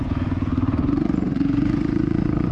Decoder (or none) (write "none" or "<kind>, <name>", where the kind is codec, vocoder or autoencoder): vocoder, Vocos